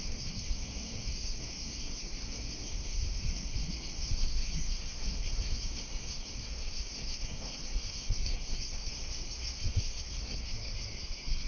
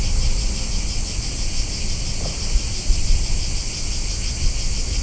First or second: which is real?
second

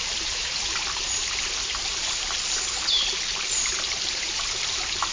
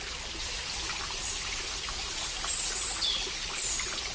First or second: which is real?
second